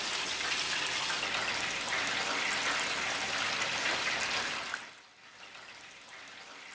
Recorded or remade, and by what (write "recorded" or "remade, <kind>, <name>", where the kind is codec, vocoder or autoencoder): recorded